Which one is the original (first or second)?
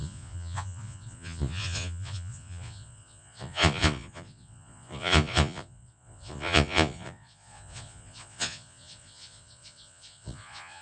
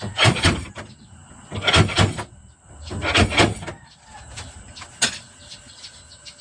second